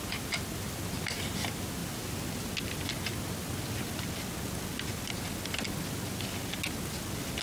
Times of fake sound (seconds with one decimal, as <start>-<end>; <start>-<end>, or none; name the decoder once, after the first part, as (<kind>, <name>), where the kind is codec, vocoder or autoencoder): none